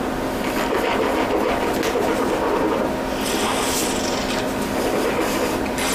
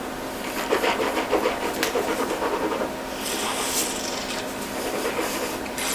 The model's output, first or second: second